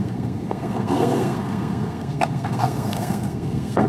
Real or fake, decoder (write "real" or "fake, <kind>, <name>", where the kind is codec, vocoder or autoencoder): fake, codec, SNAC